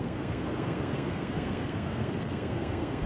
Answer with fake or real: fake